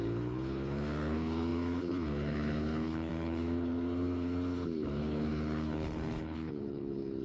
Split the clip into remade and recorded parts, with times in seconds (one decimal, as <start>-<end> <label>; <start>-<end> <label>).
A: 0.0-7.2 remade